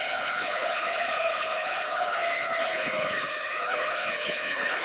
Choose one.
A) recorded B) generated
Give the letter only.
B